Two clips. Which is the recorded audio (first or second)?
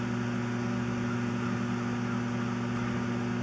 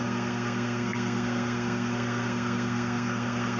first